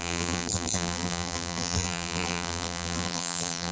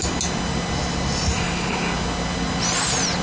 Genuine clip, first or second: second